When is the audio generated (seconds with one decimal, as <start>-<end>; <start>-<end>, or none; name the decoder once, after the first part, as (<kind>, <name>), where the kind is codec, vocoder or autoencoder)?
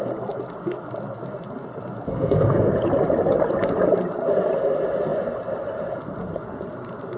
2.1-2.7 (codec, SNAC)